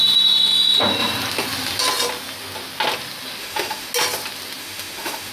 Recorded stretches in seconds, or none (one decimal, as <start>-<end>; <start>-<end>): 0.0-3.4; 3.9-4.6